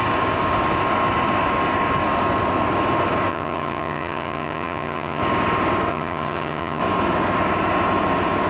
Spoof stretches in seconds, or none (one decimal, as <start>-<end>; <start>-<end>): 3.3-5.2; 5.9-6.8